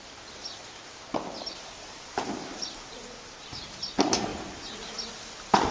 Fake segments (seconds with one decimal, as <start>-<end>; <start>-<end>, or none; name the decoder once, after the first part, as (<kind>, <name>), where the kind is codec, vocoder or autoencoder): 0.4-3.8 (vocoder, BigVGAN v2)